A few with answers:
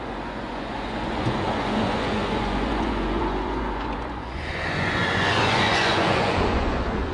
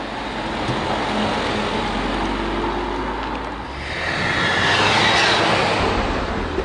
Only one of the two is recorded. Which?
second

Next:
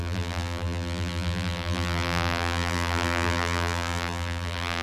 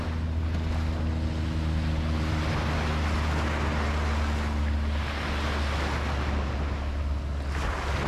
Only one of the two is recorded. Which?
second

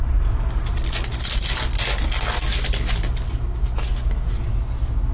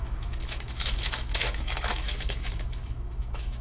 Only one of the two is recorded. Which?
first